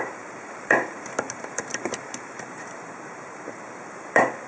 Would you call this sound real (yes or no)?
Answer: no